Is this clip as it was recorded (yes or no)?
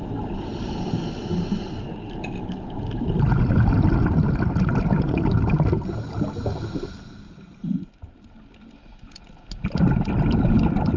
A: yes